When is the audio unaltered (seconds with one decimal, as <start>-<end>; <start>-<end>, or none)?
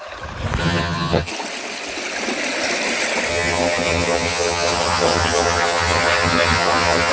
0.0-0.6; 1.3-3.3